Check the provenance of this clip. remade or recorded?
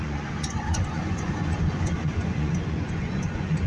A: remade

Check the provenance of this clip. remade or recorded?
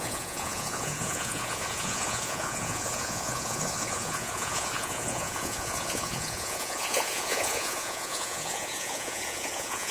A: remade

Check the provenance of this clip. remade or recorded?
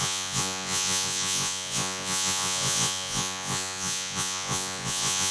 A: remade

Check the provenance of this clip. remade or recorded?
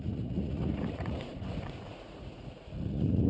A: remade